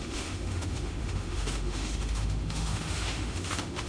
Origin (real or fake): fake